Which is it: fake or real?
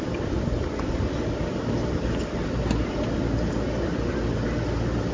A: real